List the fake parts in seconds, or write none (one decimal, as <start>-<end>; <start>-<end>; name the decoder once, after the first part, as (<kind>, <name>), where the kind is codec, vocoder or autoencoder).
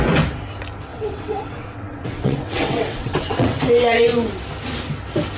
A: 0.9-3.6 (vocoder, WaveNeXt)